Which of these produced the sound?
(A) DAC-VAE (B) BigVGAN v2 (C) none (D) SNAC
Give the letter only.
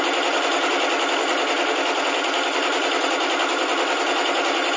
C